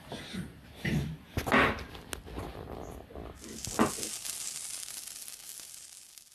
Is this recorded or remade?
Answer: recorded